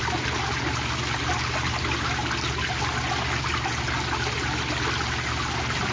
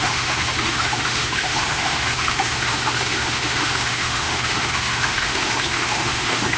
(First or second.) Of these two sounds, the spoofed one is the second